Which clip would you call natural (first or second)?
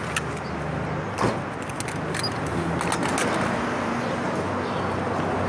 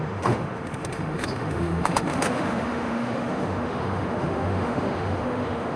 first